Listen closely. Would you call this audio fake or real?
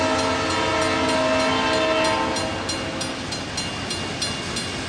real